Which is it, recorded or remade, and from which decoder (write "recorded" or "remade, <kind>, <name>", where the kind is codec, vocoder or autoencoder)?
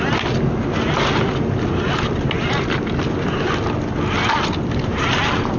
recorded